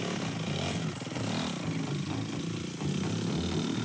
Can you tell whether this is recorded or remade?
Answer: recorded